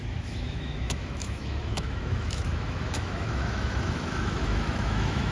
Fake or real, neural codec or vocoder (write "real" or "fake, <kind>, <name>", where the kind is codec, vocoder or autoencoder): fake, autoencoder, DAC-VAE